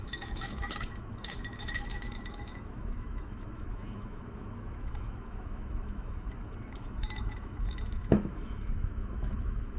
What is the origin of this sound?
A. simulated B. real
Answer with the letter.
A